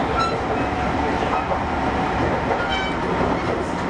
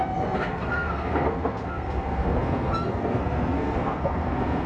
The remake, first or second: second